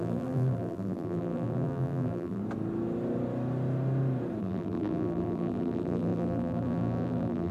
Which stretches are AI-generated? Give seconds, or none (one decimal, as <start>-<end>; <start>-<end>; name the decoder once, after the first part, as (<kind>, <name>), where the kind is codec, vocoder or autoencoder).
0.0-2.4 (vocoder, BigVGAN v2); 4.4-7.5